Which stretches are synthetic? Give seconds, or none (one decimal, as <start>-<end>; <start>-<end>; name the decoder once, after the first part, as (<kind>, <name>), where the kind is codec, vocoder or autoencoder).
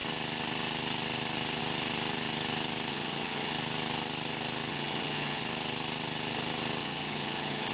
2.9-3.5 (vocoder, HiFi-GAN); 4.7-5.4; 6.8-7.7